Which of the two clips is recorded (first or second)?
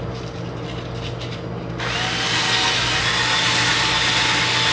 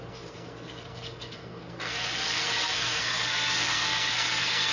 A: first